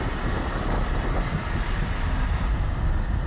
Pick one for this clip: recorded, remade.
recorded